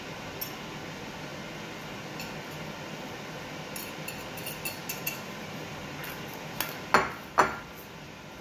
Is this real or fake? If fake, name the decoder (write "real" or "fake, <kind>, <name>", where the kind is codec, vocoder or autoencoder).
real